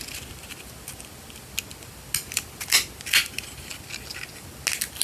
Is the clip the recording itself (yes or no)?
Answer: yes